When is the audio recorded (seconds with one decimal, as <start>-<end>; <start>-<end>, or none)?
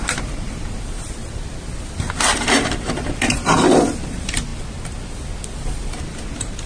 4.5-6.0